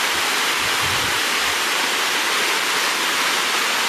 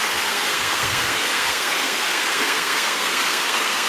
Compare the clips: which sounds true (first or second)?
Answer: first